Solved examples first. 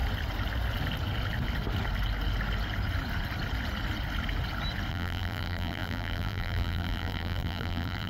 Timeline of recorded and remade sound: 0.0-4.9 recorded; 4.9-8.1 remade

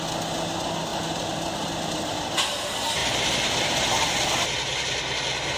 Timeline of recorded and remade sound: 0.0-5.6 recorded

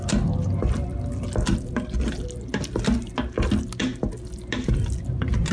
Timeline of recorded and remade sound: 0.0-5.5 recorded

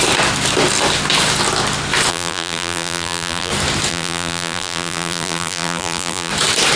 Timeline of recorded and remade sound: 0.0-2.1 recorded; 2.1-3.5 remade; 3.5-3.9 recorded; 3.9-6.3 remade; 6.3-6.8 recorded

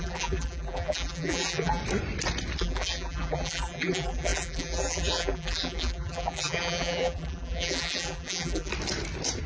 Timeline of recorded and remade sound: 0.0-1.8 remade; 1.8-2.6 recorded; 2.6-8.7 remade; 8.7-9.5 recorded

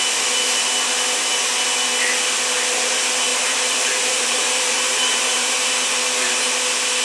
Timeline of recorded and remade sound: 0.0-3.3 recorded; 3.3-5.9 remade; 5.9-7.0 recorded

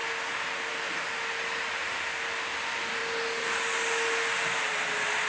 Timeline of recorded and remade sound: 0.0-5.3 recorded

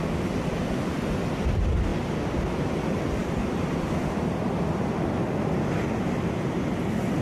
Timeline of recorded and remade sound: 0.0-7.2 recorded